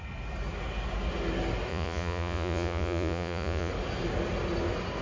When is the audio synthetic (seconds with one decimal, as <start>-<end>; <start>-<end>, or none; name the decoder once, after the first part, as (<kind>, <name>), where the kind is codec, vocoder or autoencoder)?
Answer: 1.7-3.7 (vocoder, Vocos)